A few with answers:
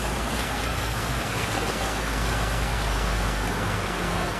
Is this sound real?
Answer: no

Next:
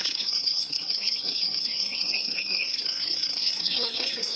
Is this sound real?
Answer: no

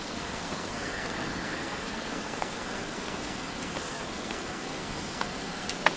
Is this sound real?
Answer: no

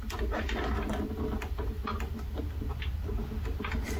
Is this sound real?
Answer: yes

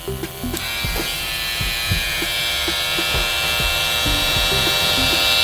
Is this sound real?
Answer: yes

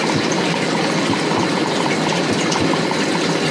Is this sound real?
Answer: no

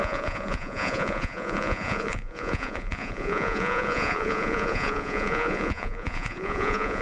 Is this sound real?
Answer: no